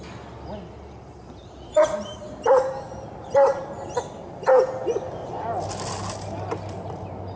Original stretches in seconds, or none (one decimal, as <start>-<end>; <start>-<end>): 0.0-1.4; 3.9-5.2; 6.7-7.4